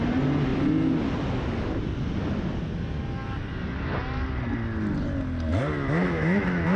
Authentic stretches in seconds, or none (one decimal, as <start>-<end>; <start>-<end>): 0.0-6.0